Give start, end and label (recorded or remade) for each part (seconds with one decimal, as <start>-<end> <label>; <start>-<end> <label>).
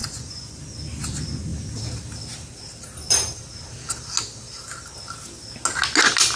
0.0-0.6 remade; 0.6-6.4 recorded